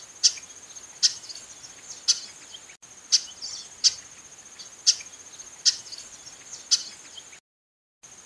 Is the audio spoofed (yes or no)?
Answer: no